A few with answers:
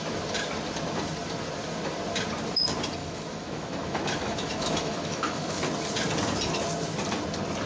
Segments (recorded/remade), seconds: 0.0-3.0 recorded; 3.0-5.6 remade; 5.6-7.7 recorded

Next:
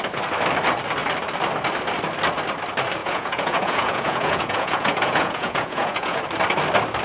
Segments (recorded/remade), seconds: 0.0-3.0 recorded; 3.0-6.2 remade; 6.2-7.0 recorded